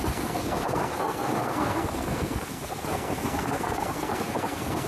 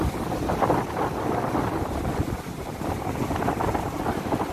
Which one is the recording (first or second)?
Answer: second